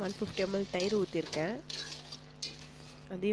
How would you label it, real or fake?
real